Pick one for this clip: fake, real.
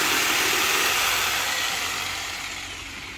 real